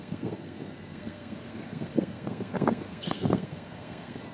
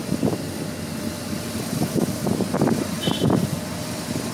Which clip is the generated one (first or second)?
first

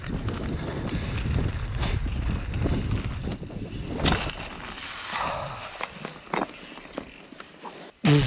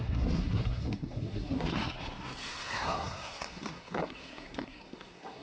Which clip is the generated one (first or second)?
second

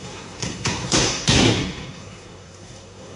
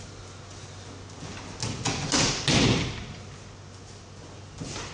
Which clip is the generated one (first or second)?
first